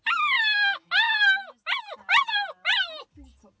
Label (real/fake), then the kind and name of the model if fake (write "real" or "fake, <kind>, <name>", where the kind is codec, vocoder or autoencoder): real